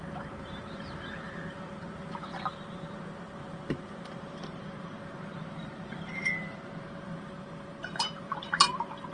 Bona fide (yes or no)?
no